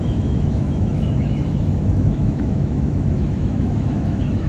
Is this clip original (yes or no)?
no